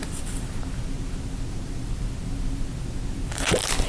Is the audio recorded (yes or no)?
yes